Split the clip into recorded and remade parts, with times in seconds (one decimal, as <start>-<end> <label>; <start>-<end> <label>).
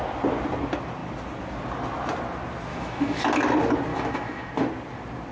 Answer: 0.0-2.7 recorded; 2.7-3.2 remade; 3.2-3.9 recorded; 3.9-4.5 remade; 4.5-5.3 recorded